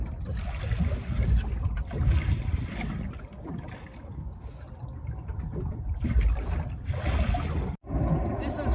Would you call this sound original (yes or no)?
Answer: yes